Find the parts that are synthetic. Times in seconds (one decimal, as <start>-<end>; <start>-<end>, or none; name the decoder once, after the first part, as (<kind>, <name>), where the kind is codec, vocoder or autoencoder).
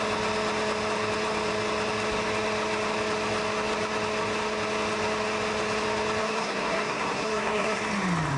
6.2-7.8 (codec, SNAC)